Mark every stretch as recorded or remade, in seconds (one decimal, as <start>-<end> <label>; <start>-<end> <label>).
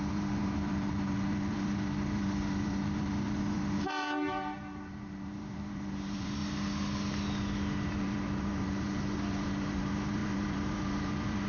0.0-6.4 remade; 6.4-7.9 recorded; 7.9-11.5 remade